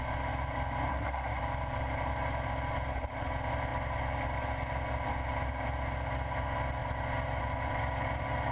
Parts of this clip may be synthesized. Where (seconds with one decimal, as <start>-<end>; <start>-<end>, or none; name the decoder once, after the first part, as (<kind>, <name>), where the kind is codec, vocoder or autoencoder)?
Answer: 0.9-1.4 (codec, SNAC)